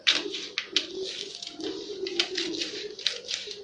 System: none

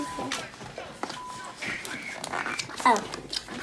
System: none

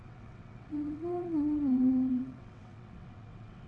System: vocoder, WaveNeXt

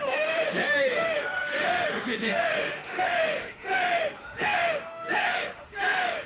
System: autoencoder, DAC-VAE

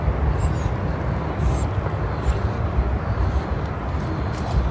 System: none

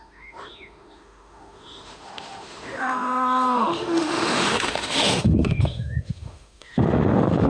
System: autoencoder, DAC-VAE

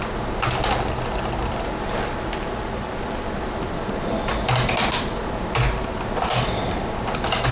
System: none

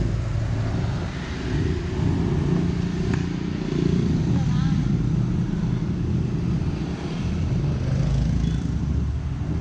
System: none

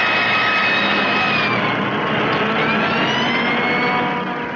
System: none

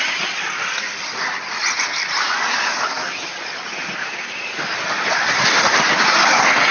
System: none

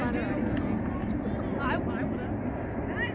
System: none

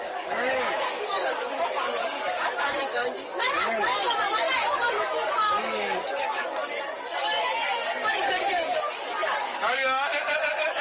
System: codec, DAC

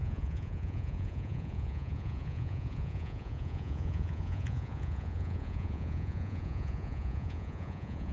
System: vocoder, Vocos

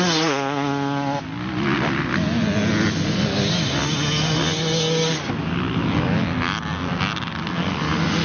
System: none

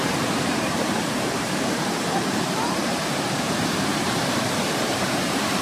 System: vocoder, BigVGAN v2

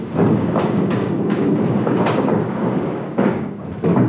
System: codec, DAC